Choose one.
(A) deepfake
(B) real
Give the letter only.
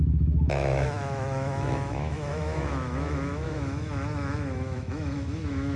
A